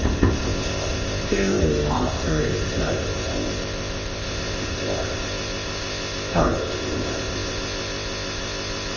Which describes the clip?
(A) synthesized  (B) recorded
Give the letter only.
A